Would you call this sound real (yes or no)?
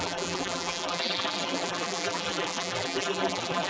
no